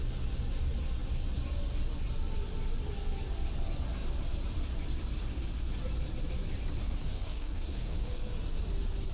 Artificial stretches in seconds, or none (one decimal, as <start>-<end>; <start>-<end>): 6.8-8.3